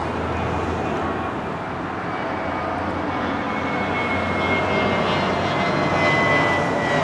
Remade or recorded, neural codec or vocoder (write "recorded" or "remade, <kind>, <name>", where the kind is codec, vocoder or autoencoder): recorded